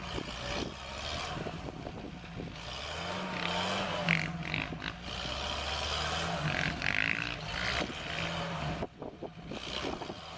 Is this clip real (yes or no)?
yes